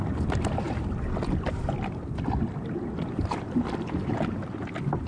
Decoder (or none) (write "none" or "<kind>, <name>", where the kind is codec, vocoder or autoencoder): none